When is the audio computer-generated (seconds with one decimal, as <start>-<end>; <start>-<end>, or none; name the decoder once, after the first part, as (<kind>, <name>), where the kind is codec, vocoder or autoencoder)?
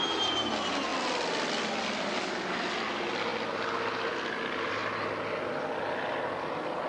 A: none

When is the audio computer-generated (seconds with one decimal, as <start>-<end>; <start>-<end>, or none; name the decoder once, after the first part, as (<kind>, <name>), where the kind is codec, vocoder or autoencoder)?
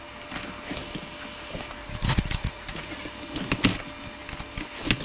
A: 1.8-2.9 (vocoder, Vocos)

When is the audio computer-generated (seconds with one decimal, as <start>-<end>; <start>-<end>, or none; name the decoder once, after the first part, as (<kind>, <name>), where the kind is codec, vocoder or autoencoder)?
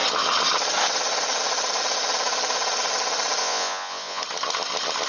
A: 3.4-4.2 (vocoder, Vocos)